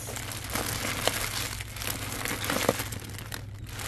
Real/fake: real